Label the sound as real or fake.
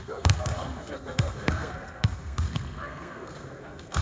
fake